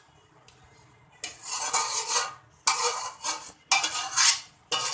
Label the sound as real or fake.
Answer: real